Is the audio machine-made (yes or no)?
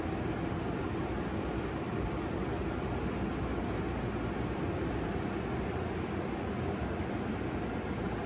no